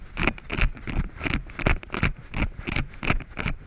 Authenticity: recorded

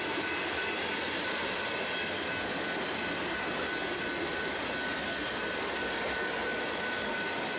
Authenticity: recorded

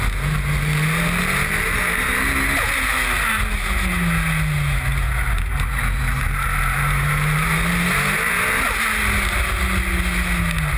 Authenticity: recorded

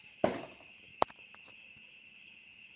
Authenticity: recorded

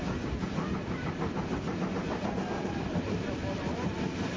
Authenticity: recorded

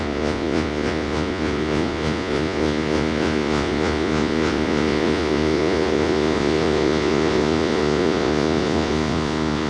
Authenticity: remade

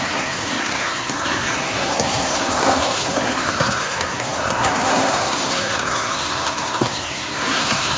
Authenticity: remade